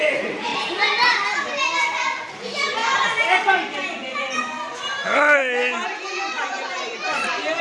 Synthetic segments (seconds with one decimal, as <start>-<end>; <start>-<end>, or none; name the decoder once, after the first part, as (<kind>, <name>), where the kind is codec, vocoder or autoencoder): 0.0-2.8 (vocoder, BigVGAN v2); 6.7-7.6